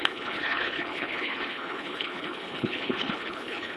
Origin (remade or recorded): remade